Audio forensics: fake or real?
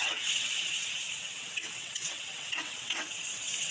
fake